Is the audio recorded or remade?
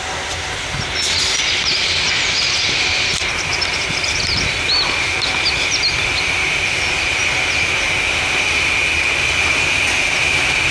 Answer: recorded